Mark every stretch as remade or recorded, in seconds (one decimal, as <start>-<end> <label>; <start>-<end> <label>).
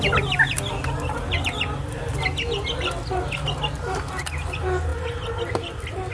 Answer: 0.0-6.1 recorded